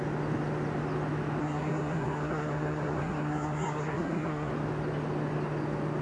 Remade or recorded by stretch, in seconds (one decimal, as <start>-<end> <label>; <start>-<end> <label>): 0.0-1.4 recorded; 1.4-4.5 remade; 4.5-6.0 recorded